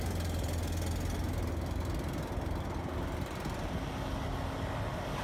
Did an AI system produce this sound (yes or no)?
no